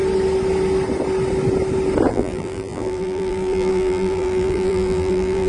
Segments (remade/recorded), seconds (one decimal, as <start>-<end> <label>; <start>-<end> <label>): 0.0-2.1 recorded; 2.1-5.5 remade